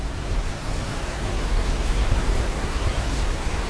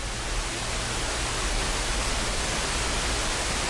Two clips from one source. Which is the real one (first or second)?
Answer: second